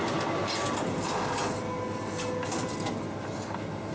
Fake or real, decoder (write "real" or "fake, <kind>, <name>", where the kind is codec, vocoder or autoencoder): real